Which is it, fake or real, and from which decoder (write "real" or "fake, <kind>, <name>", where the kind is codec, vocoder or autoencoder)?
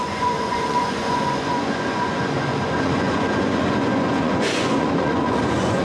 fake, vocoder, Vocos